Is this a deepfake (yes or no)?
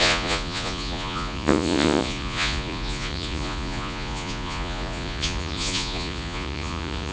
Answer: yes